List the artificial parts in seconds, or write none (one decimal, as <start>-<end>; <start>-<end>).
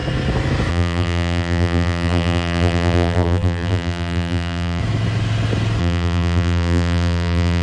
0.7-4.8; 5.8-7.6